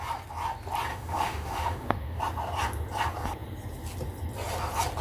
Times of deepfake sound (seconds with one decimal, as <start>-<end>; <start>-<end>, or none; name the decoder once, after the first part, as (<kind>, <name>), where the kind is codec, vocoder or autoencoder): 0.9-2.2 (autoencoder, DAC-VAE)